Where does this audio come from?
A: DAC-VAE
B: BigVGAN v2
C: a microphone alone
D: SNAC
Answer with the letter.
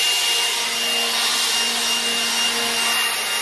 C